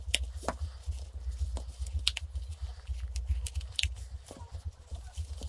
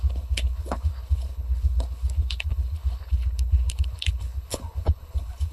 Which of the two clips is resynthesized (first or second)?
second